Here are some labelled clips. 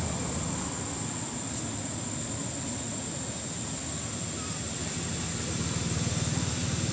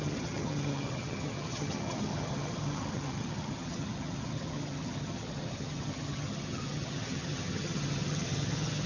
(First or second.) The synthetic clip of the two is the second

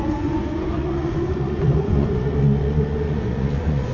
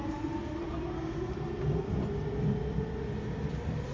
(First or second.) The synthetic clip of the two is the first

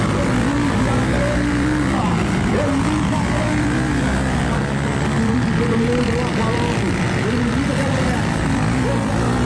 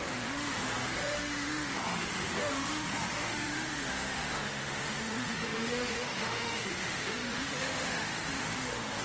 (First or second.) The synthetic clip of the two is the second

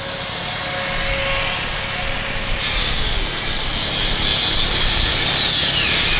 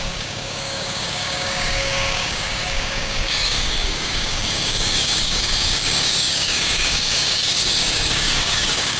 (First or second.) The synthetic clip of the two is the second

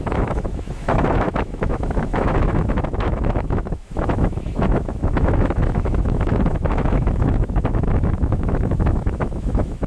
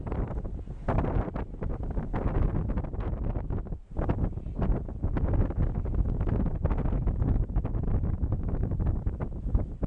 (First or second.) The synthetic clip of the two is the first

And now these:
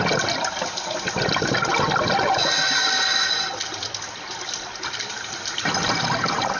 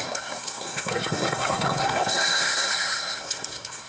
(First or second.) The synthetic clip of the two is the second